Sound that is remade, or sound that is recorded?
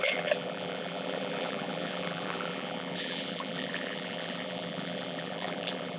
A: remade